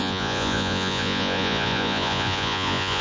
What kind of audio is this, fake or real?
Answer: fake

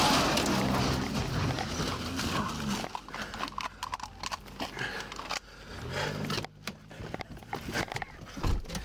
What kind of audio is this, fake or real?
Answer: real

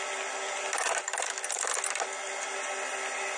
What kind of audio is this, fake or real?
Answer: real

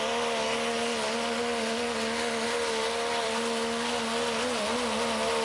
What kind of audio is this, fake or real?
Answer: real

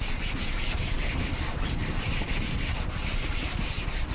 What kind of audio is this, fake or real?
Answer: real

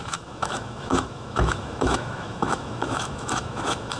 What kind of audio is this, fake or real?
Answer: fake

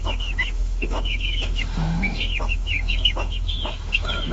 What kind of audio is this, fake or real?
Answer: fake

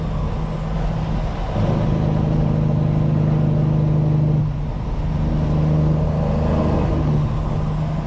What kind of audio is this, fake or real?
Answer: real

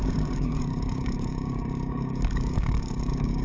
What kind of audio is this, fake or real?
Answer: fake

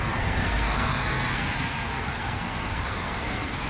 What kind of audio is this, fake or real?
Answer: fake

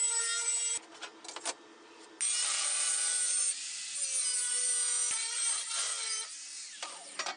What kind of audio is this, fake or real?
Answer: real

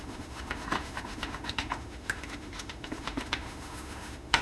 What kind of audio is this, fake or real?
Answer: fake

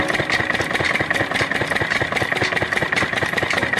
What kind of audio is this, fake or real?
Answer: real